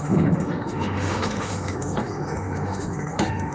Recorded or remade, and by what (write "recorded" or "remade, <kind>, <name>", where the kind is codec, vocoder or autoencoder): remade, autoencoder, DAC-VAE